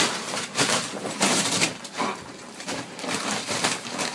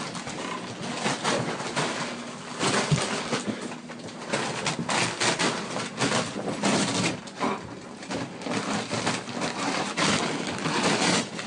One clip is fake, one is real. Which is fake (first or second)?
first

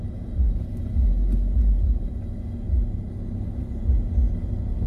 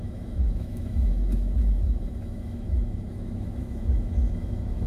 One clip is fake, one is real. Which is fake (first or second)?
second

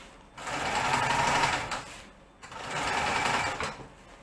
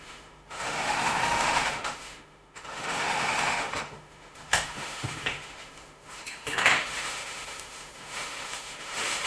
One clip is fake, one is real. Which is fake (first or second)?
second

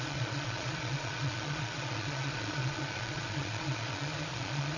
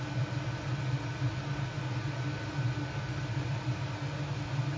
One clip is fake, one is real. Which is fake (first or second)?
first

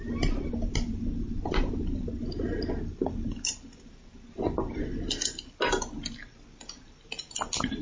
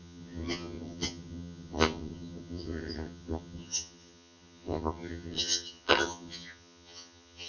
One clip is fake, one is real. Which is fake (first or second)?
second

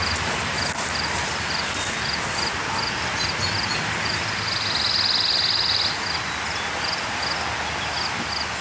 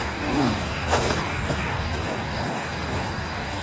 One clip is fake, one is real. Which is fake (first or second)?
second